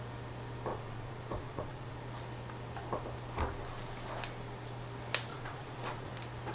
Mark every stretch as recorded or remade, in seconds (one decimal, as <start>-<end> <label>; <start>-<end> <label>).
0.0-0.7 recorded; 0.7-1.9 remade; 1.9-5.3 recorded; 5.3-6.1 remade; 6.1-6.5 recorded